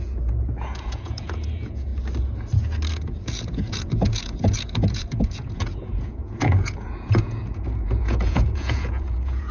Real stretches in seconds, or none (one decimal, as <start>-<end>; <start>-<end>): 1.9-2.9